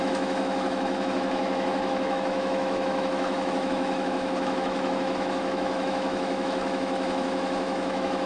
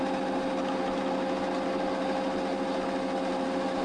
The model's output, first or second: first